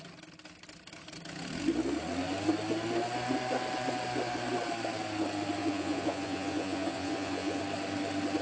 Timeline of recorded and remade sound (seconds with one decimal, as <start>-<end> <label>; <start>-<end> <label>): 0.0-5.6 recorded; 5.6-7.6 remade; 7.6-8.4 recorded